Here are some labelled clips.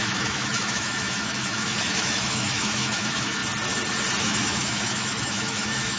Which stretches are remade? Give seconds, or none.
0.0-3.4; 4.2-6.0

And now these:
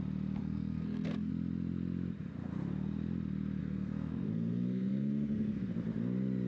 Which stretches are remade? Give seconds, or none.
0.4-1.3; 3.6-5.7

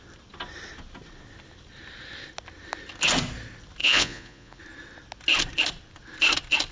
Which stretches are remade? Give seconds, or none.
3.8-4.6

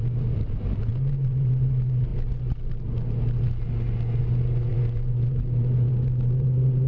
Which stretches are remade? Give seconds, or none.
0.0-2.1; 4.2-6.9

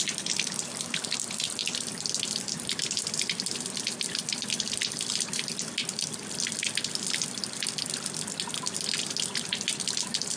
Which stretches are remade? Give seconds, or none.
none

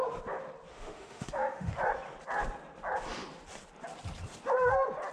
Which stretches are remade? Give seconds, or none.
0.7-1.7

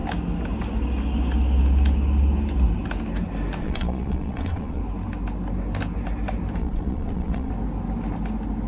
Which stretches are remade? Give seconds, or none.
3.6-4.8; 6.6-7.5

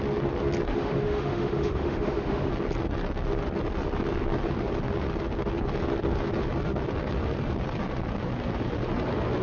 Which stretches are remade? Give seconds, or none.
0.7-2.5